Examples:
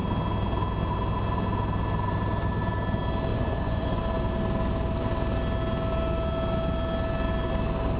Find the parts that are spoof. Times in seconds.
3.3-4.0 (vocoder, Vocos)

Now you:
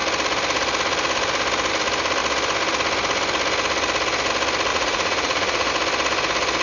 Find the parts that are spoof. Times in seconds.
4.7-5.7 (vocoder, Vocos)